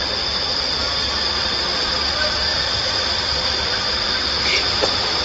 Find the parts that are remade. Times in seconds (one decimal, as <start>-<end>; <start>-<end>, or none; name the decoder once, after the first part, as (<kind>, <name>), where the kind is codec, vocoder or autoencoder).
0.8-1.9 (vocoder, BigVGAN v2); 2.5-3.7